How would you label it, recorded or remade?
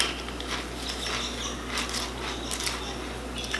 recorded